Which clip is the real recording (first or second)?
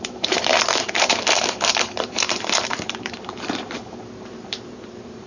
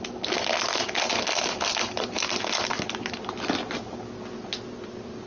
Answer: second